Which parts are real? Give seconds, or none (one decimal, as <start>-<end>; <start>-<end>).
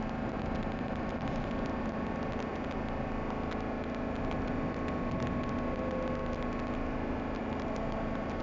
0.0-7.4